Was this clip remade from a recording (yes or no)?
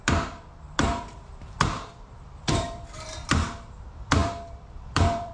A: yes